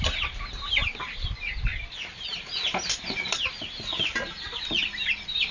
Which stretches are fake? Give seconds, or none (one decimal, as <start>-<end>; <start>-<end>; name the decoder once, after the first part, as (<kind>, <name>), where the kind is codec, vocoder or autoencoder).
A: none